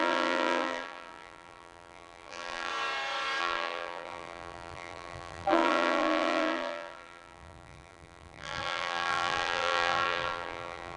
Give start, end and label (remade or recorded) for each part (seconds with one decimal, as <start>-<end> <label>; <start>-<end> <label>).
0.0-2.7 remade; 2.7-3.4 recorded; 3.4-11.0 remade